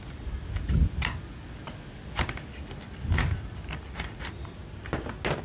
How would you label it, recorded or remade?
recorded